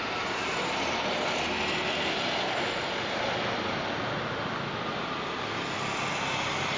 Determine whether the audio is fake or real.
real